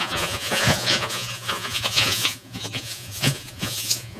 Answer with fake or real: fake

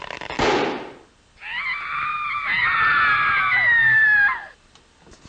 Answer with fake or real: real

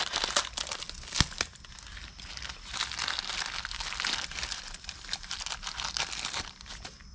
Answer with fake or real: real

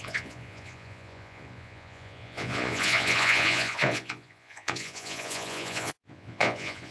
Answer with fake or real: fake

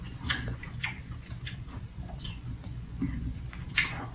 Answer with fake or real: fake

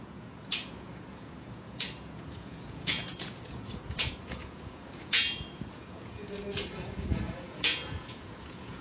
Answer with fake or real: fake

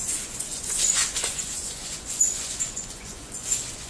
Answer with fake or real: fake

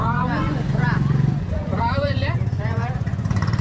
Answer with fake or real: fake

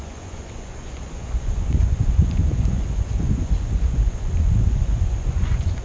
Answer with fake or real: fake